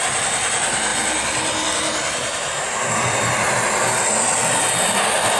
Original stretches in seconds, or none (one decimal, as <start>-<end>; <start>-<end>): 0.0-5.4